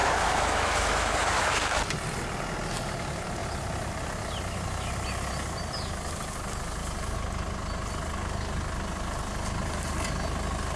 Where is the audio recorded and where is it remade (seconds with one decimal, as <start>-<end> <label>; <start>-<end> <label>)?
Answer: 0.0-1.8 remade; 1.8-10.8 recorded